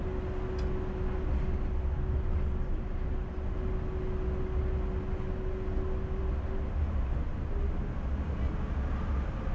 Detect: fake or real real